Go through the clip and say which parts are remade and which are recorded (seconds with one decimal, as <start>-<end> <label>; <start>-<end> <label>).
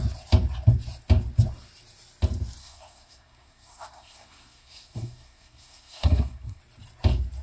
0.0-2.6 recorded; 2.6-6.6 remade; 6.6-7.4 recorded